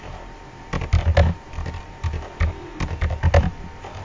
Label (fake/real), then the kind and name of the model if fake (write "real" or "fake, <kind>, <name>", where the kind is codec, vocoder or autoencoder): real